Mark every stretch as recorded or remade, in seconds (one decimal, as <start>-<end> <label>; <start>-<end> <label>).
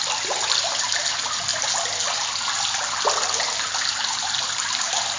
0.0-5.2 recorded